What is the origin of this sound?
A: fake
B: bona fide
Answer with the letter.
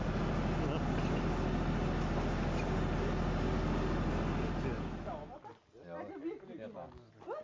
B